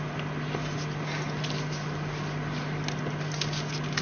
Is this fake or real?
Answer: real